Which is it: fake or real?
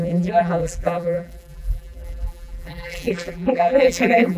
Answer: fake